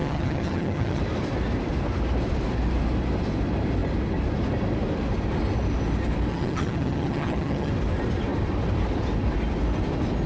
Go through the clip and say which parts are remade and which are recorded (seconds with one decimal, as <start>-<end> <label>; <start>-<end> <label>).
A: 0.0-1.0 remade; 1.0-6.3 recorded; 6.3-7.7 remade; 7.7-10.3 recorded